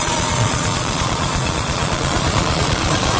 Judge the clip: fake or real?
fake